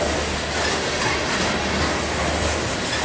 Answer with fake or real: real